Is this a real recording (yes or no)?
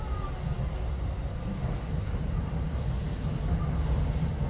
yes